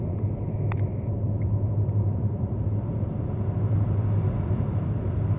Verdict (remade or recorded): remade